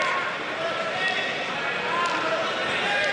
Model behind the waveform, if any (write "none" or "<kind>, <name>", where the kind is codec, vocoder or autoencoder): none